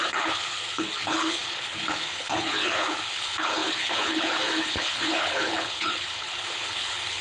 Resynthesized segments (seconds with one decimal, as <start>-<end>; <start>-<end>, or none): 0.0-7.2